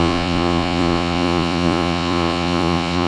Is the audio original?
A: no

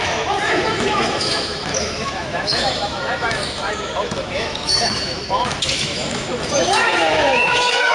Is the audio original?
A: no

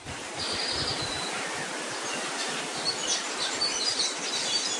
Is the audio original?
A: no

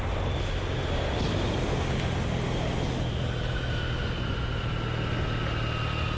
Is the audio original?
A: yes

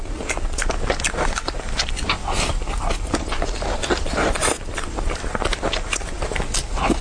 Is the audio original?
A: yes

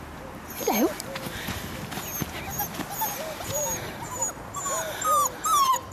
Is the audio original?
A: yes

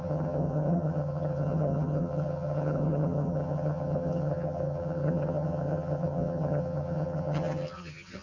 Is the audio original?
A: no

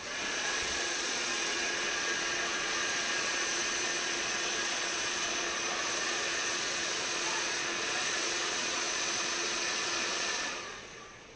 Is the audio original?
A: no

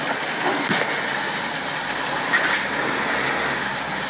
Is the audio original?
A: yes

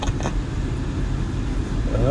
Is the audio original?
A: yes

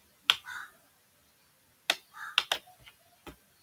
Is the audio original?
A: yes